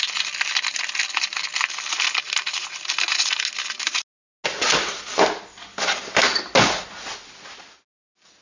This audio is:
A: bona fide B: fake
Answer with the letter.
A